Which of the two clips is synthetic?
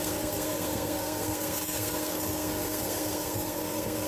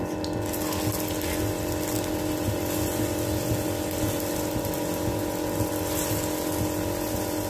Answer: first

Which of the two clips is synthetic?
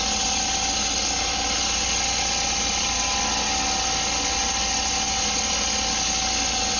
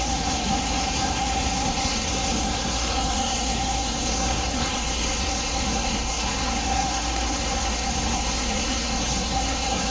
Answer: second